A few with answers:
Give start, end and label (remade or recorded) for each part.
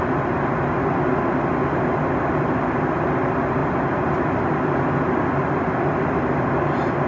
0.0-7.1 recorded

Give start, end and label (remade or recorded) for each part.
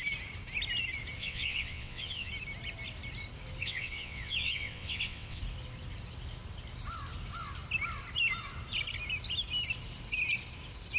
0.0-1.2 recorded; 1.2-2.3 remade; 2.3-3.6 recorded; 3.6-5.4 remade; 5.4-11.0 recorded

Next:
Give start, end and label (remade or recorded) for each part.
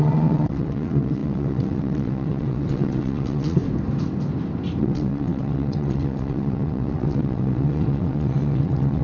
0.0-3.6 remade; 3.6-4.8 recorded; 4.8-9.0 remade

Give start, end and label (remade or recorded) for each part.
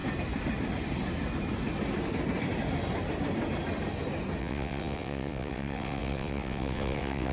0.0-4.4 recorded; 4.4-7.3 remade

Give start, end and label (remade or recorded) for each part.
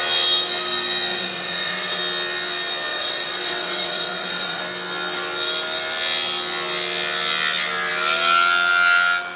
0.0-1.1 recorded; 1.1-2.0 remade; 2.0-2.9 recorded; 2.9-4.6 remade; 4.6-9.4 recorded